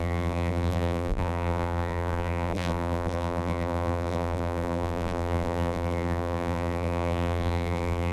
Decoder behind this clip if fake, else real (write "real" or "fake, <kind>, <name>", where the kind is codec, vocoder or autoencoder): fake, vocoder, BigVGAN v2